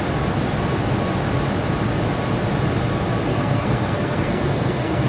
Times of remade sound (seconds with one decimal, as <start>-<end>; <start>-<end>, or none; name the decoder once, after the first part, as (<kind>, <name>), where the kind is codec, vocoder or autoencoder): 3.3-5.1 (codec, SNAC)